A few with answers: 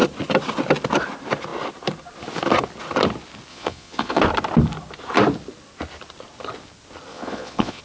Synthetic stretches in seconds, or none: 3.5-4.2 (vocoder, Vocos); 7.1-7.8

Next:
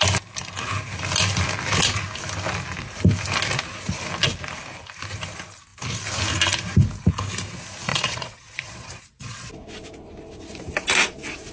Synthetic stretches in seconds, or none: 7.9-9.5 (vocoder, Vocos)

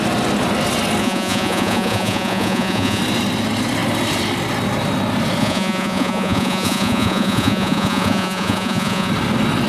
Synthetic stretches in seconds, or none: 1.0-3.0 (vocoder, Vocos); 5.4-9.1

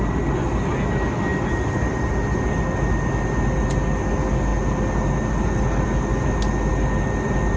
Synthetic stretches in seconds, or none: none

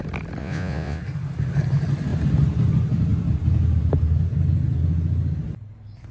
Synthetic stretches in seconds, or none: 0.4-1.0 (vocoder, Vocos)

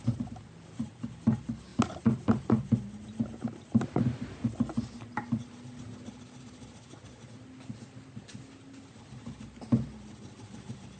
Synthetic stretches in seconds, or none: none

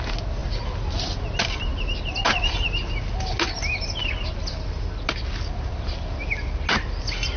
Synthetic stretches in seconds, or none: none